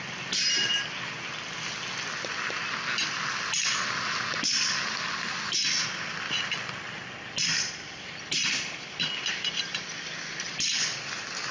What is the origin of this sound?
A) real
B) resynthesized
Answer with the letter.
A